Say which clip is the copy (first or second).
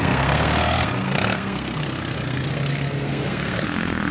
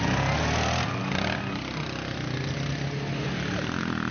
first